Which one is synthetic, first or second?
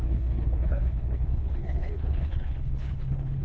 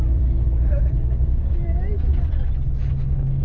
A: first